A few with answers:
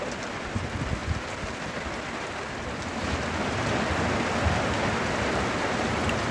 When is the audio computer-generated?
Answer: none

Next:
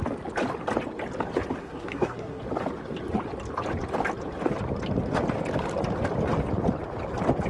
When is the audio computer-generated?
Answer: 1.6-2.4 (codec, SNAC)

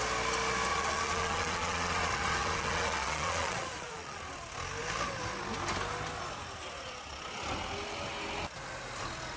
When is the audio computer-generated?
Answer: 0.7-4.2 (vocoder, Vocos)

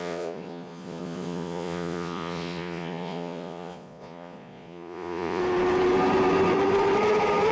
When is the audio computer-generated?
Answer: 0.0-5.4 (vocoder, Vocos)